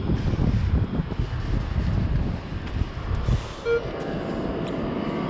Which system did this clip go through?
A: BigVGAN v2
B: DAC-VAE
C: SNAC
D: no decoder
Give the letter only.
D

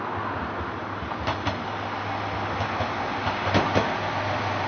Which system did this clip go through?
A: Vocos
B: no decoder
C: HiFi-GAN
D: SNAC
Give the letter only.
B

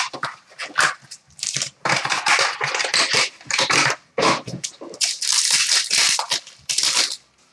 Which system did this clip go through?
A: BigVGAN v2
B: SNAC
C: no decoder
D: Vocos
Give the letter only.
A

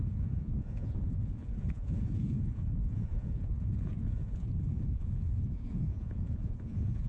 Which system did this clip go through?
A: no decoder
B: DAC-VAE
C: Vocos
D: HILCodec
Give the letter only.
C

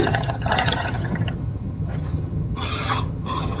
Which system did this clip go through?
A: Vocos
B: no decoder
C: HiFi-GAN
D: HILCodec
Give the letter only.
C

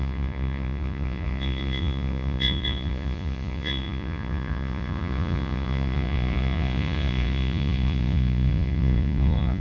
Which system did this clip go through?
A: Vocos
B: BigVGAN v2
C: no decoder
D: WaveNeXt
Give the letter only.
A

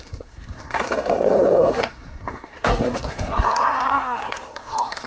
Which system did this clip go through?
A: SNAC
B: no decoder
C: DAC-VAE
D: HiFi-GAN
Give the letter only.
A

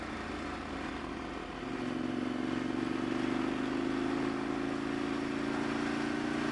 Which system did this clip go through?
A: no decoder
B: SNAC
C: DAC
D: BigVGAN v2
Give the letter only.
A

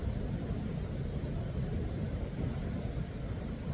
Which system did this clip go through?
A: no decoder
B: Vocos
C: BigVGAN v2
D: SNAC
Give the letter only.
A